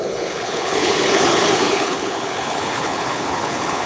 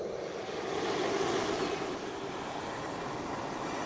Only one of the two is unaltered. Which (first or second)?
second